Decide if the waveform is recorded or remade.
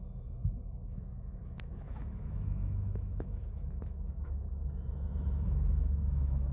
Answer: remade